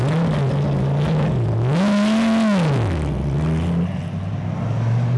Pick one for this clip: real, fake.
real